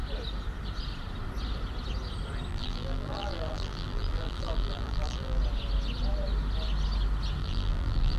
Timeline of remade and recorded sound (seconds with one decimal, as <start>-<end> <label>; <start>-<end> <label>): 0.0-2.5 recorded; 2.5-5.4 remade; 5.4-7.4 recorded; 7.4-8.2 remade